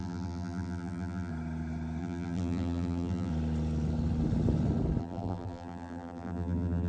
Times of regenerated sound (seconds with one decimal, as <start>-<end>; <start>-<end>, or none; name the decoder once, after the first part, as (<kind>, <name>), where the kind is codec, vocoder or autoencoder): 0.0-1.3 (vocoder, BigVGAN v2); 2.0-3.3; 5.0-6.9